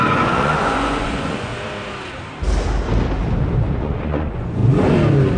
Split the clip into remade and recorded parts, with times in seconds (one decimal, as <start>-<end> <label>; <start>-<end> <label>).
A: 0.0-1.5 remade; 1.5-3.8 recorded; 3.8-4.6 remade; 4.6-5.4 recorded